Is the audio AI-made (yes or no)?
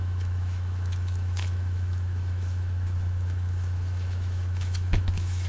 yes